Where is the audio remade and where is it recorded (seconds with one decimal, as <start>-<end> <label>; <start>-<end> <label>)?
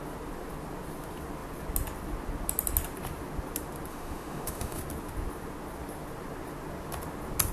0.0-3.9 recorded; 3.9-4.8 remade; 4.8-7.5 recorded